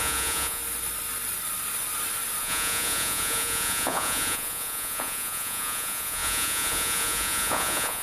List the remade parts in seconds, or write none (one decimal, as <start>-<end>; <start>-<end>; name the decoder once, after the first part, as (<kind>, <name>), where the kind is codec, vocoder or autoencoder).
0.0-0.6 (vocoder, Vocos); 2.4-8.0